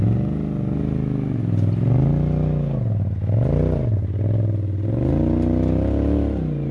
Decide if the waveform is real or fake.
real